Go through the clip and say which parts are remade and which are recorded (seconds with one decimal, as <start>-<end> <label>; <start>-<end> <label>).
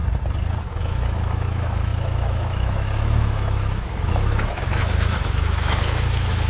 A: 0.0-0.6 recorded; 0.6-6.5 remade